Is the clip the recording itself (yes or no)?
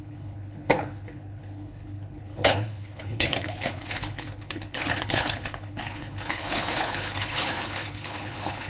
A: no